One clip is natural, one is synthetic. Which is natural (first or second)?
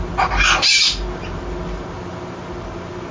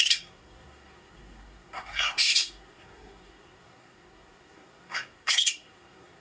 first